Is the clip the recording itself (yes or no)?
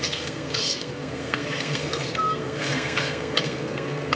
no